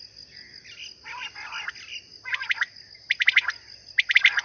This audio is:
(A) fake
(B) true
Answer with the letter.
B